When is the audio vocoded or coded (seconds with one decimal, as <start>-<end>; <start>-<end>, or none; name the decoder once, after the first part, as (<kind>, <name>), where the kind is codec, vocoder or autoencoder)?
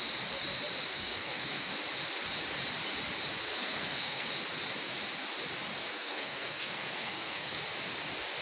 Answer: 0.9-1.7 (codec, SNAC); 3.5-4.3; 5.8-7.6